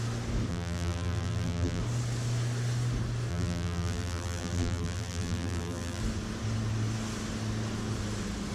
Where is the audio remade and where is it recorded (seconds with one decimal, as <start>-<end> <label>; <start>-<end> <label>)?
0.0-0.5 recorded; 0.5-1.8 remade; 1.8-3.3 recorded; 3.3-6.0 remade; 6.0-8.5 recorded

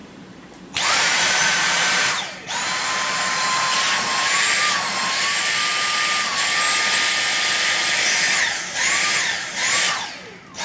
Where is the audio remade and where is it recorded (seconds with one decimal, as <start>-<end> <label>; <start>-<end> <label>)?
0.0-4.7 remade; 4.7-10.6 recorded

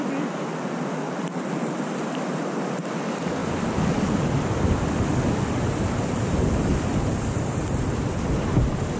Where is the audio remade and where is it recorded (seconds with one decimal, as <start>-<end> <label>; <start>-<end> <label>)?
0.0-3.4 remade; 3.4-5.3 recorded; 5.3-9.0 remade

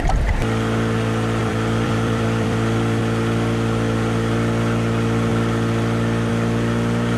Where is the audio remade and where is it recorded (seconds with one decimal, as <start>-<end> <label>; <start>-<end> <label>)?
0.0-1.4 recorded; 1.4-3.0 remade; 3.0-7.2 recorded

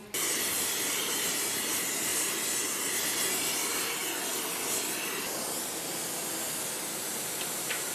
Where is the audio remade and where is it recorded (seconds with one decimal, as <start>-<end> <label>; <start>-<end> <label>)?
0.0-0.9 recorded; 0.9-2.1 remade; 2.1-3.3 recorded; 3.3-4.0 remade; 4.0-7.0 recorded; 7.0-7.9 remade